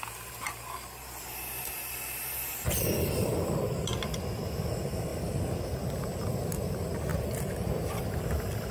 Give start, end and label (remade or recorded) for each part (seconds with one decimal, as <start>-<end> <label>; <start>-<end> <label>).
0.0-2.5 recorded; 2.5-3.3 remade; 3.3-8.7 recorded